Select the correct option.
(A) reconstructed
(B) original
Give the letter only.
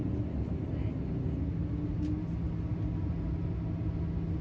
B